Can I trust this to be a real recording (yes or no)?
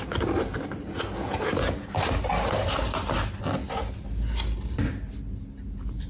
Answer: yes